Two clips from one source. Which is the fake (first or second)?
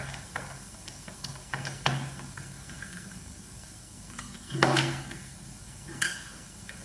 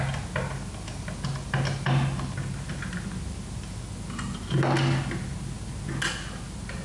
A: first